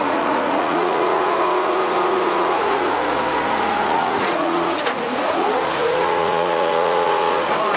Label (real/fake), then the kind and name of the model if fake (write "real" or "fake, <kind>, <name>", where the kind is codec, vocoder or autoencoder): fake, vocoder, Vocos